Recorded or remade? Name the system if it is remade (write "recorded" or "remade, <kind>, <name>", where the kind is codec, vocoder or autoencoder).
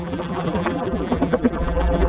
remade, vocoder, BigVGAN v2